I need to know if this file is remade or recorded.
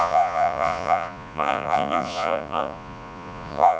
remade